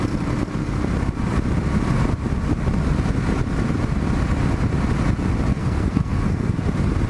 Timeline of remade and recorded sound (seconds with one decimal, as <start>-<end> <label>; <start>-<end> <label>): 0.0-5.5 recorded; 5.5-6.6 remade; 6.6-7.1 recorded